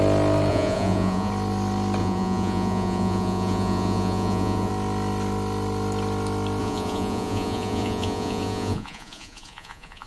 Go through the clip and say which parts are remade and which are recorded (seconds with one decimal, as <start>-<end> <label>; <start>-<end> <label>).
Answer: 0.0-0.5 recorded; 0.5-1.3 remade; 1.3-2.0 recorded; 2.0-4.7 remade; 4.7-6.6 recorded; 6.6-10.1 remade